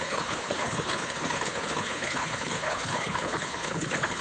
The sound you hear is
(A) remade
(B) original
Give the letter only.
A